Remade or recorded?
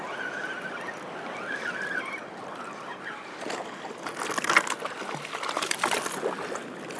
recorded